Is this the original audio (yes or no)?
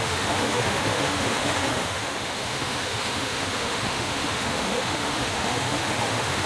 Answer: no